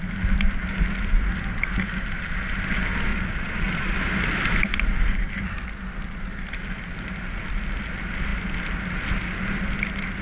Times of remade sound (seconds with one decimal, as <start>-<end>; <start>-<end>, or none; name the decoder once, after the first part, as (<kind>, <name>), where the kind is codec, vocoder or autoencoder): 3.1-4.0 (vocoder, Vocos)